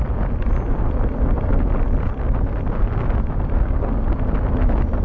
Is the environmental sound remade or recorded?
recorded